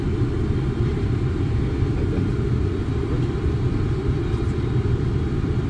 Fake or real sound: fake